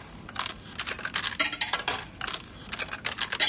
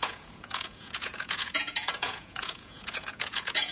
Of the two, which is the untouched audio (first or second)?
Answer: first